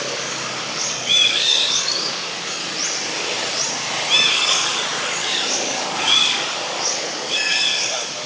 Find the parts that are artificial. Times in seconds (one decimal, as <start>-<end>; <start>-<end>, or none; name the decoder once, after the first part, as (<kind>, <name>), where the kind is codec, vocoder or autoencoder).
0.0-2.6 (codec, DAC); 4.3-8.3